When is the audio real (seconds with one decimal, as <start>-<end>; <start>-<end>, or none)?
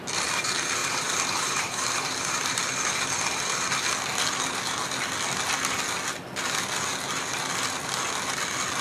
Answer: 0.0-0.8; 2.6-8.8